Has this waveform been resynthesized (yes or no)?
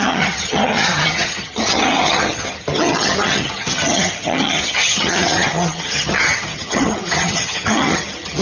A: yes